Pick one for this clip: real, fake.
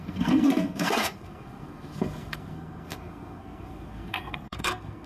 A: fake